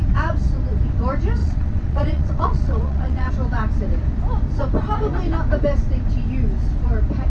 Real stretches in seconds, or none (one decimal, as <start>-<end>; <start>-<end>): 0.0-1.4; 3.3-7.3